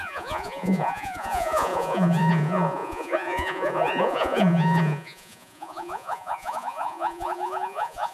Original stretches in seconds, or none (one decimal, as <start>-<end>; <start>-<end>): none

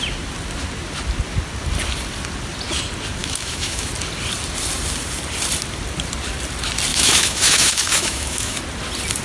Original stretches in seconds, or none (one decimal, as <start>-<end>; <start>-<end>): 0.0-3.2; 3.9-6.9; 8.6-9.2

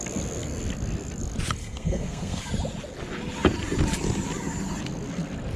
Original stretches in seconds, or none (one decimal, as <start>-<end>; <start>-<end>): 0.0-1.6; 2.5-5.6

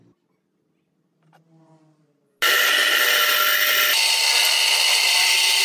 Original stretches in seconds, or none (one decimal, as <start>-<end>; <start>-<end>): 0.0-5.6

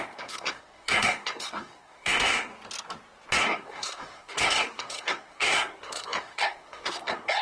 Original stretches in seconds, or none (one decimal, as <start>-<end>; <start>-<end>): 2.5-3.4

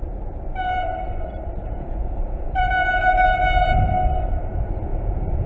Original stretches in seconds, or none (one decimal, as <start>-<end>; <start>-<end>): 0.0-1.6; 2.6-4.9

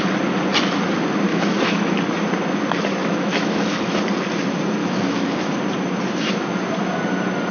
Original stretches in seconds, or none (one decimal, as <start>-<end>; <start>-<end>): 0.0-1.3; 1.9-3.0; 4.0-4.8; 5.6-7.5

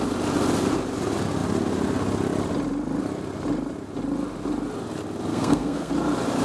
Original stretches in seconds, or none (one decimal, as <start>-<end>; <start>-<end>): 0.0-5.3; 5.9-6.4